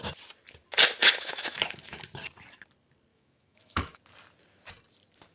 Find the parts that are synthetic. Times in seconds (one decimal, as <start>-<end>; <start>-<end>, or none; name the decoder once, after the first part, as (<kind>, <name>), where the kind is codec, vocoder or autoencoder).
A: 1.0-2.0 (autoencoder, DAC-VAE); 3.1-4.0